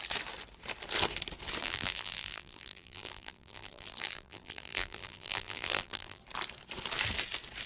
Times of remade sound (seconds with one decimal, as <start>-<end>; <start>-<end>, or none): 1.6-6.2